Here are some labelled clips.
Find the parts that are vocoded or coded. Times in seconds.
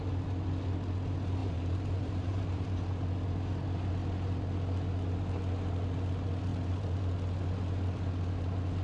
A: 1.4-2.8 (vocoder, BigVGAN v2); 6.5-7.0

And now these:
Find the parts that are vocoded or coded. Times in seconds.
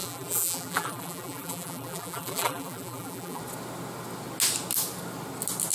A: 0.0-3.4 (vocoder, BigVGAN v2)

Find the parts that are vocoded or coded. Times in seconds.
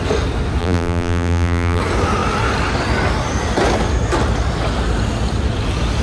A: 0.6-1.8 (vocoder, BigVGAN v2)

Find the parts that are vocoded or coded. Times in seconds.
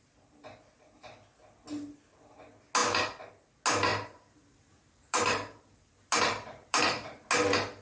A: 3.9-7.3 (vocoder, BigVGAN v2)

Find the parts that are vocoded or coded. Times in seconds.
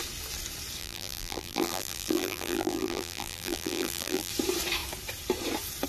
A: 0.8-4.3 (vocoder, BigVGAN v2)